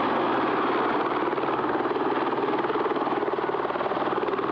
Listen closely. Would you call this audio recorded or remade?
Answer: recorded